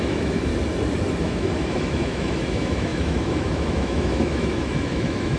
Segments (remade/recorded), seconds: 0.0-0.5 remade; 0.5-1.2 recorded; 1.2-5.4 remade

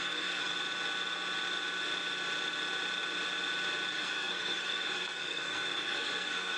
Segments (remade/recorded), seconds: 0.0-0.5 remade; 0.5-3.9 recorded; 3.9-6.6 remade

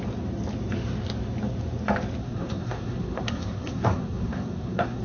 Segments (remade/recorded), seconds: 0.0-2.2 recorded; 2.2-5.0 remade

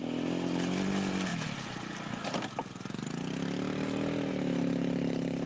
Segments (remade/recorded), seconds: 0.0-5.5 recorded

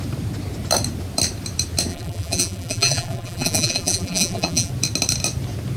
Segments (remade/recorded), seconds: 0.0-1.9 recorded; 1.9-4.7 remade; 4.7-5.8 recorded